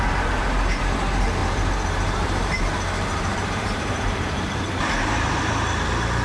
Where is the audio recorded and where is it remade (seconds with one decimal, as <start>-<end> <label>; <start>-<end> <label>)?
0.0-1.4 recorded; 1.4-2.6 remade; 2.6-3.1 recorded; 3.1-5.4 remade; 5.4-6.2 recorded